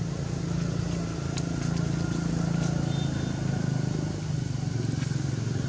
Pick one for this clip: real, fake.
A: real